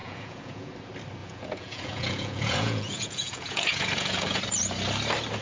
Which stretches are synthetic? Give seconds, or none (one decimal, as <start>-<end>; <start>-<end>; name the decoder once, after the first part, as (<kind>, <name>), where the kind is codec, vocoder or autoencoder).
0.0-0.7 (vocoder, Vocos); 1.2-4.4